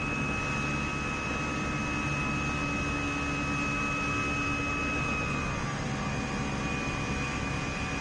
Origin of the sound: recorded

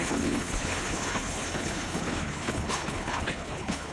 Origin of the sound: remade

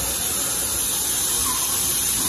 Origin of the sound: recorded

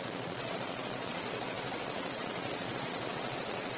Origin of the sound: remade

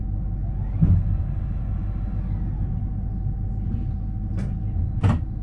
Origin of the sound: recorded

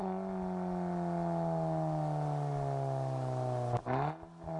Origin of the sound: recorded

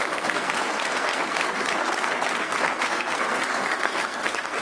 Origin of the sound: remade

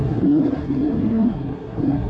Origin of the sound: remade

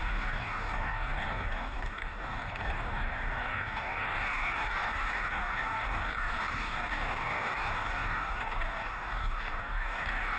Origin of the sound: remade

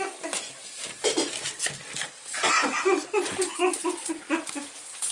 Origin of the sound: recorded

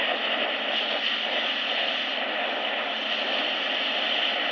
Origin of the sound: recorded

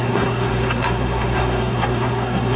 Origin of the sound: remade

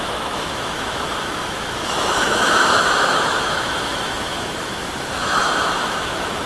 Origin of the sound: remade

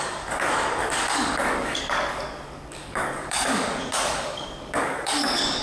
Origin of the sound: remade